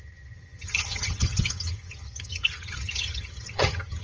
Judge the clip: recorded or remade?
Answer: remade